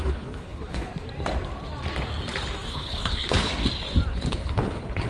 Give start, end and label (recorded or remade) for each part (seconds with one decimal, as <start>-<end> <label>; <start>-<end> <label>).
0.0-0.9 remade; 0.9-2.7 recorded; 2.7-3.5 remade; 3.5-4.3 recorded; 4.3-5.1 remade